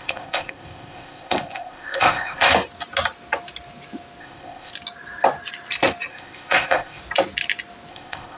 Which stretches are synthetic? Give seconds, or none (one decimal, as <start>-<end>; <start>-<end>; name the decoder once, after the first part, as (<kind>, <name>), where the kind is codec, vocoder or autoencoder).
0.0-2.5 (codec, ZipCodec); 4.2-4.7; 6.1-7.0; 7.9-8.4